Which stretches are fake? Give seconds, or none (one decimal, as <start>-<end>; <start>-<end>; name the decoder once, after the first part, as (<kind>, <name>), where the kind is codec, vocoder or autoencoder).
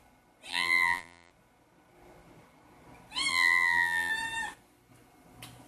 0.5-1.3 (vocoder, BigVGAN v2); 3.3-4.1